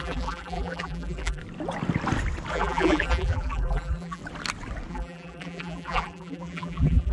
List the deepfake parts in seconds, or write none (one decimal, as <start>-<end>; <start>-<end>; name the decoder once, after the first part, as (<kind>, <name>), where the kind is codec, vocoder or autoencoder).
0.0-1.4 (vocoder, BigVGAN v2); 2.5-4.2; 4.9-7.1